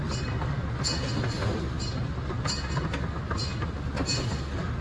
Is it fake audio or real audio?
real